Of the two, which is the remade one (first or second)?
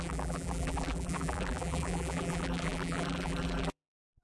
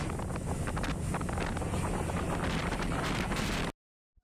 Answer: first